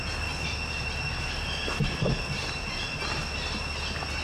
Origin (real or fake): real